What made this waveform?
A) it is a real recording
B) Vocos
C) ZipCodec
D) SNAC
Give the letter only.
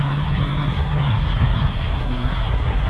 D